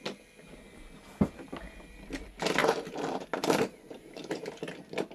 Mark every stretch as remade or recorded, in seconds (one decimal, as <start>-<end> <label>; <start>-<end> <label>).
0.0-2.6 recorded; 2.6-4.5 remade; 4.5-5.1 recorded